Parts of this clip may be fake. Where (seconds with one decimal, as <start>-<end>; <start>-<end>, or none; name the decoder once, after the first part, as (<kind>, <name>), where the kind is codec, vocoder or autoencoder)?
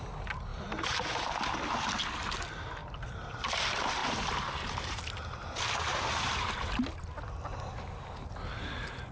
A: 0.5-1.3 (vocoder, BigVGAN v2); 4.0-5.0; 5.9-6.8